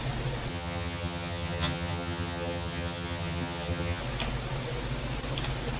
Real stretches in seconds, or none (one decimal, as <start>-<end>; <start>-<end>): 0.0-0.5; 4.0-5.8